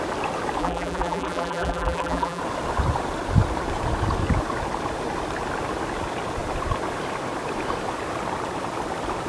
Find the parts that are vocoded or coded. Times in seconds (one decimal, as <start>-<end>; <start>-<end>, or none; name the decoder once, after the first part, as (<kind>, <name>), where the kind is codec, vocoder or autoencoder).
0.6-2.4 (vocoder, BigVGAN v2)